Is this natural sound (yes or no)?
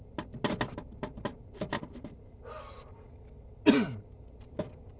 yes